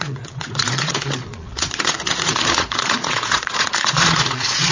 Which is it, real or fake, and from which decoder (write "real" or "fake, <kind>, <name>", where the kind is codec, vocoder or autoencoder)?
fake, vocoder, Vocos